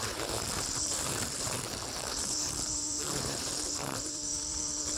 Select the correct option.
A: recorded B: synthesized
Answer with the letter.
B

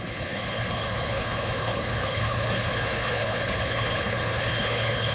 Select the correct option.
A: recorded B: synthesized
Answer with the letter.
B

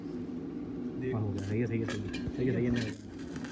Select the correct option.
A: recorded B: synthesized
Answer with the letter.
A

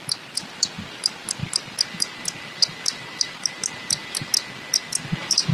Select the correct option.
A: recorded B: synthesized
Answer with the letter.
A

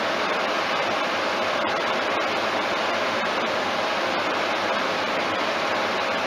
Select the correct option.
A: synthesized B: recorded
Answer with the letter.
B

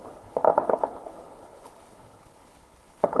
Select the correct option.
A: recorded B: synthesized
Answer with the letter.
B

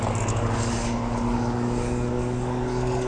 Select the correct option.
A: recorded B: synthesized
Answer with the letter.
B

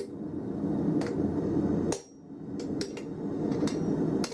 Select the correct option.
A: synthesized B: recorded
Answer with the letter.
B